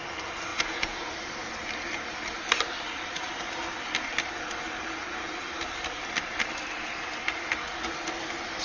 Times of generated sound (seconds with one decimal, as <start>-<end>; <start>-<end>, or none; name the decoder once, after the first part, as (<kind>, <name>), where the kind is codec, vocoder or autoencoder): 0.5-1.1 (vocoder, Vocos)